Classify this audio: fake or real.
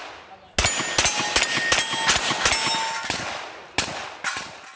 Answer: real